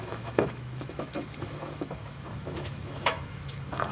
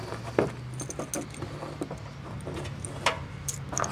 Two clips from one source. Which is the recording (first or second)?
second